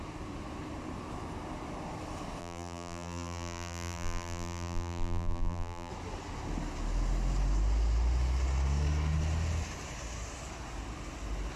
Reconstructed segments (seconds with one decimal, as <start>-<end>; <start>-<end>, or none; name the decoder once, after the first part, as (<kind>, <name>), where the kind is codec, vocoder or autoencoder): 2.4-5.9 (vocoder, BigVGAN v2)